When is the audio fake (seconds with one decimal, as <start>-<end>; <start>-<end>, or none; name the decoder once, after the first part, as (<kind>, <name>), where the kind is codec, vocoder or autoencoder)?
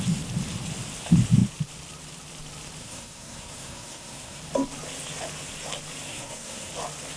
2.8-4.4 (codec, SNAC); 6.1-6.7